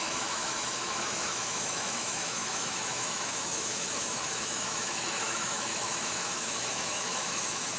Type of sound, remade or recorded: remade